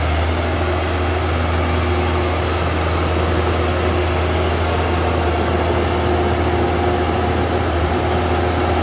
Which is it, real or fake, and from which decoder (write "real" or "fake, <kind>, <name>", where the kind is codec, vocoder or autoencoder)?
real